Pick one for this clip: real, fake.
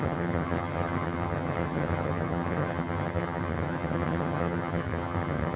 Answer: fake